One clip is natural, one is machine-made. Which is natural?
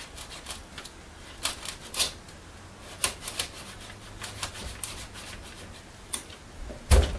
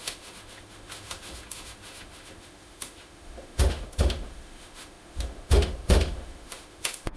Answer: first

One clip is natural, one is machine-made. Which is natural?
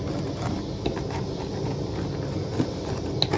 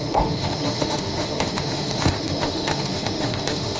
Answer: first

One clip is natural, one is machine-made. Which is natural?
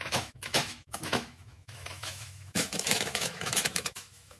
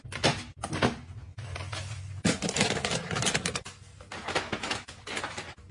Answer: second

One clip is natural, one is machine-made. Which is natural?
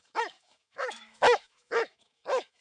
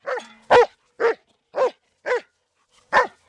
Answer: second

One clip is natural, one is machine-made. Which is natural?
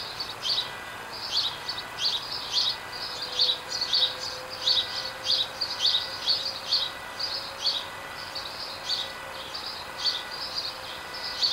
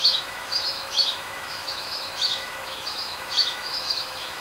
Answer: first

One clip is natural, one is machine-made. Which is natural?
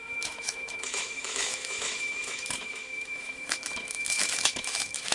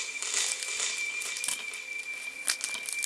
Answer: second